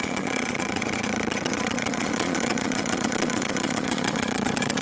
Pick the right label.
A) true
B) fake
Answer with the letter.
B